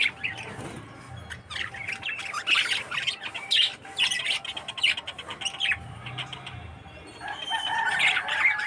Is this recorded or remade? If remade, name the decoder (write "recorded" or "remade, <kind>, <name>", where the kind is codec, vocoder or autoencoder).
recorded